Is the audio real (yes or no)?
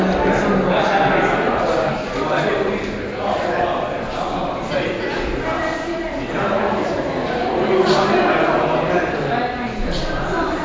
yes